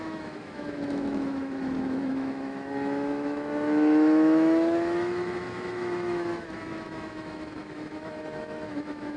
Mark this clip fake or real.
fake